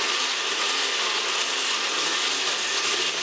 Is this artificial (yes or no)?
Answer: no